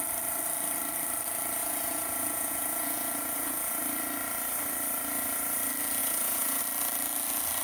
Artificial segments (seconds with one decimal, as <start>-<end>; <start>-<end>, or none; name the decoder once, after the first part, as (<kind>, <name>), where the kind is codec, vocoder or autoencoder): 1.6-3.8 (vocoder, Vocos); 6.0-6.6